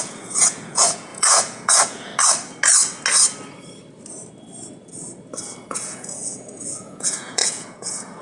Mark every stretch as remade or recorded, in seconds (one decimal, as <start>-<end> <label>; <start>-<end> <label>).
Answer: 0.0-2.1 remade; 2.1-5.6 recorded; 5.6-8.2 remade